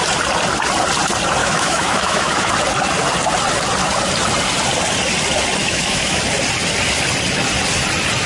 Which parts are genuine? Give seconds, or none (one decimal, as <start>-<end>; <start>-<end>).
0.0-1.4; 2.5-5.6; 6.2-8.3